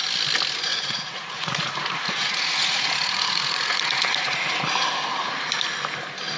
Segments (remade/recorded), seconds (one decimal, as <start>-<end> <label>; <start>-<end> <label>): 0.0-0.7 recorded; 0.7-4.5 remade; 4.5-6.4 recorded